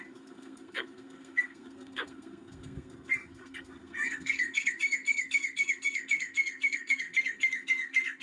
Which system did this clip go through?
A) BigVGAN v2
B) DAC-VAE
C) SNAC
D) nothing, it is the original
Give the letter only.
C